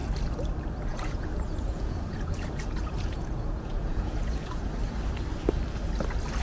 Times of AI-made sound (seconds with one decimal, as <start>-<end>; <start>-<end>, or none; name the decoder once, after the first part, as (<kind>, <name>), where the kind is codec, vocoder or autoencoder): 0.9-4.7 (vocoder, Vocos)